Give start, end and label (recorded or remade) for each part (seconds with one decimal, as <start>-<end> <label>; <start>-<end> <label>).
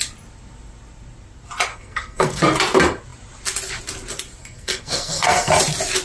0.0-1.7 recorded; 1.7-2.4 remade; 2.4-4.4 recorded; 4.4-5.5 remade; 5.5-6.0 recorded